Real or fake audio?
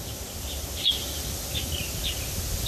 real